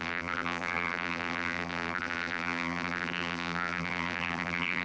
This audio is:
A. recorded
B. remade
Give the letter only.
B